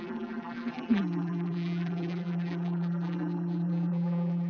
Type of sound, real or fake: fake